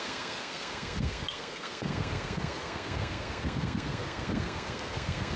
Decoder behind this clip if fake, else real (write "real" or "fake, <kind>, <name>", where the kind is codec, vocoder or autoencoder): fake, codec, SNAC